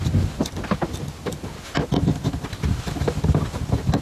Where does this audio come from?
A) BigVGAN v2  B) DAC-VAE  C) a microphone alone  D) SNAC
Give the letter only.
C